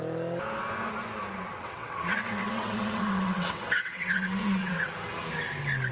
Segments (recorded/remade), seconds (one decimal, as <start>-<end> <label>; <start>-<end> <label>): 0.0-1.5 recorded; 1.5-4.9 remade; 4.9-5.9 recorded